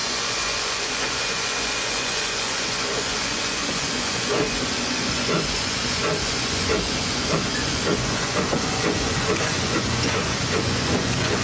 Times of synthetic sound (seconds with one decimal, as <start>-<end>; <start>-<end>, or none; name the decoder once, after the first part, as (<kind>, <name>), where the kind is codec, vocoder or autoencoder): 0.0-11.4 (vocoder, Vocos)